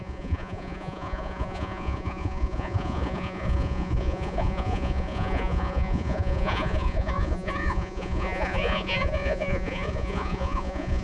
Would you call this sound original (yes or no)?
no